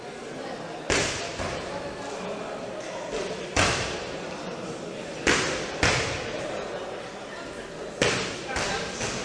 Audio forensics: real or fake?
real